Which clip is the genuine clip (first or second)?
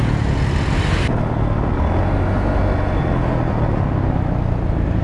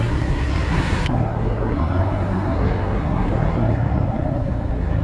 first